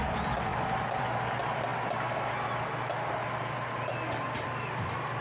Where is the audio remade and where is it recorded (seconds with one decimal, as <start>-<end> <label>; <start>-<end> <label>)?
0.0-5.2 recorded